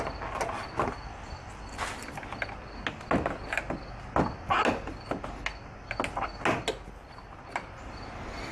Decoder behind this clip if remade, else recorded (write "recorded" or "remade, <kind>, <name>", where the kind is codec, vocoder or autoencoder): recorded